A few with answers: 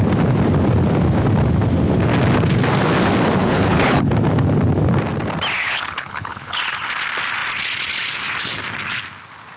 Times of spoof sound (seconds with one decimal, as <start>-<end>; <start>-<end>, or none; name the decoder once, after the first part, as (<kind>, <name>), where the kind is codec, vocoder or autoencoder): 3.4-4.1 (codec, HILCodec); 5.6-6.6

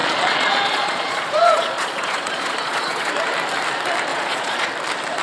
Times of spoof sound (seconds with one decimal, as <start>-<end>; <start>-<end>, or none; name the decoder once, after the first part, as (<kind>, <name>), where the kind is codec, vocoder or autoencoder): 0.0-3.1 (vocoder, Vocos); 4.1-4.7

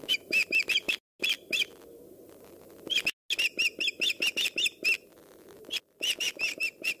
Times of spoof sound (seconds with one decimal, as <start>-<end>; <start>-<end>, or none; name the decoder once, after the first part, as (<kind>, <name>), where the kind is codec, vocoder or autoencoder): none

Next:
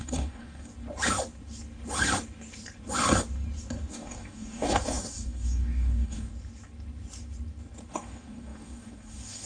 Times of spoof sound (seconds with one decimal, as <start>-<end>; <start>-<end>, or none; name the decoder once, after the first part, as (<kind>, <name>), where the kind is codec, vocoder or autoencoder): 0.0-0.7 (codec, DAC); 3.9-6.3; 7.9-9.5

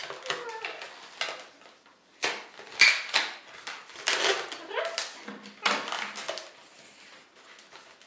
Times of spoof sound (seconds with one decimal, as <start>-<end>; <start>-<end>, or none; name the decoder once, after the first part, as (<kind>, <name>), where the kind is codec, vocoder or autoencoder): none

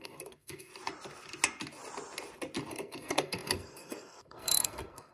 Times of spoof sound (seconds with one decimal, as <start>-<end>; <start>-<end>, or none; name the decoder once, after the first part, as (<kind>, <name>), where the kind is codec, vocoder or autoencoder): 0.0-0.7 (codec, SNAC); 2.7-5.1